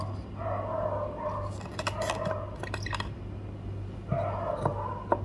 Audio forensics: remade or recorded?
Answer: recorded